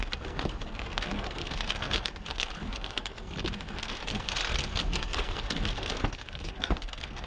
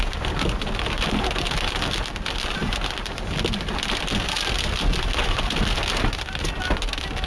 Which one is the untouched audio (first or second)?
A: second